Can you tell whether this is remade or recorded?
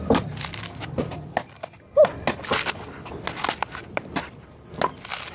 recorded